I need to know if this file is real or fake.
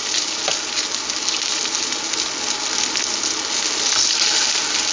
real